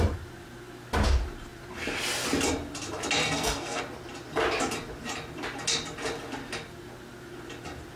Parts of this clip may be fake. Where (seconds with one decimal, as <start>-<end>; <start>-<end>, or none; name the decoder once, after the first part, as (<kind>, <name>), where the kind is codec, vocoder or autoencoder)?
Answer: 3.2-3.8 (codec, SNAC)